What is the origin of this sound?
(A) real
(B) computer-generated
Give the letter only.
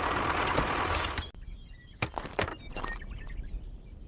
A